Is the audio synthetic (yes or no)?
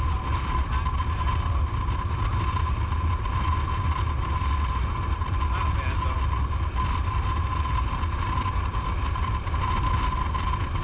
no